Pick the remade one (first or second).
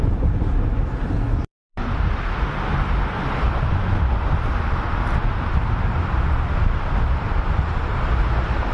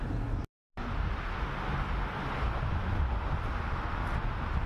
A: first